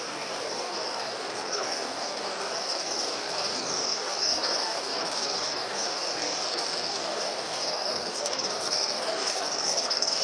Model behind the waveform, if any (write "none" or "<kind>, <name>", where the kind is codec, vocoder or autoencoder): codec, DAC